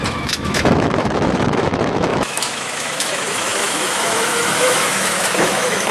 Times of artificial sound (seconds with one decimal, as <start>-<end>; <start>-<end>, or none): 0.0-5.9